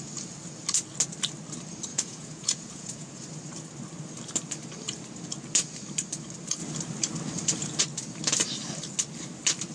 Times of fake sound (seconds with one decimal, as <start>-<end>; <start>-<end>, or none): 1.9-3.2